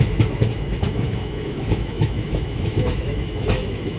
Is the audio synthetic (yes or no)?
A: yes